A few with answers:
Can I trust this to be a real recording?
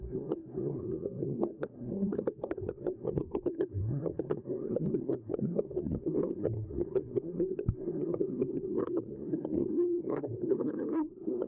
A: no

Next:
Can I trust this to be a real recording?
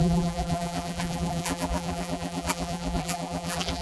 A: no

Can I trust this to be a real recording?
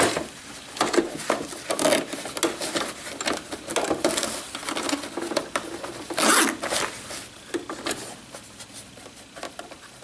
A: yes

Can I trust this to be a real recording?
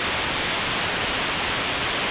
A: no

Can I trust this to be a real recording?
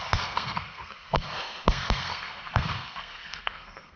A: no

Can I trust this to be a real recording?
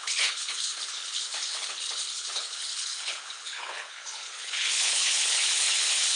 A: no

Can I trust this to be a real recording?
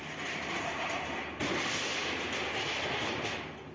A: yes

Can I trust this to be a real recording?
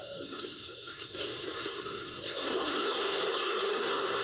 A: no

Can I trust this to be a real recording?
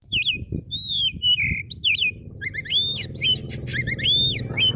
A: yes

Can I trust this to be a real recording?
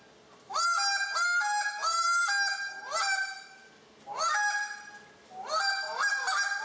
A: yes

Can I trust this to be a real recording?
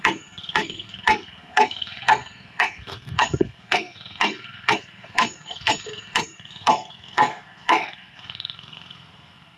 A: no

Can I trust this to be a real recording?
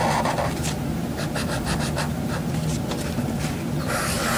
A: yes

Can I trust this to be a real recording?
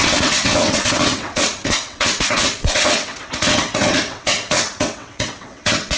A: no